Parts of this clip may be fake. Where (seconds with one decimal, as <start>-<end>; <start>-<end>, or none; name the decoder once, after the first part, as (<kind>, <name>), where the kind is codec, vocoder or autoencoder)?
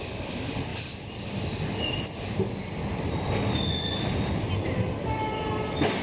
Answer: none